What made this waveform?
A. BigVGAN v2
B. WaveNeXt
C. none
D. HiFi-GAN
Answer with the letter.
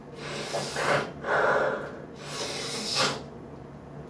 C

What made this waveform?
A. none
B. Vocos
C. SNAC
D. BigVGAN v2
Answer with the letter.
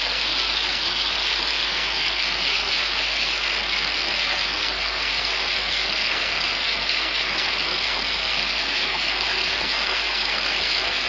C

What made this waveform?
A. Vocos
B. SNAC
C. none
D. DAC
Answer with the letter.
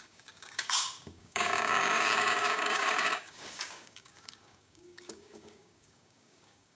D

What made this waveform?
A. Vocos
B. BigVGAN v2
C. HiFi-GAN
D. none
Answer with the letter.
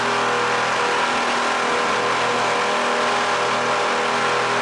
D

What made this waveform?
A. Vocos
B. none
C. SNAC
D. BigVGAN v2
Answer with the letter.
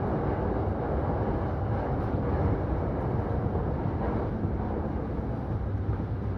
B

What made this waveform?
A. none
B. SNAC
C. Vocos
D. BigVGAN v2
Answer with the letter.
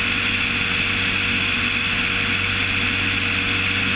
A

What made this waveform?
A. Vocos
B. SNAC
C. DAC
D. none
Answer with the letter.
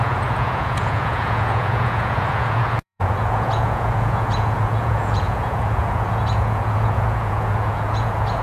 A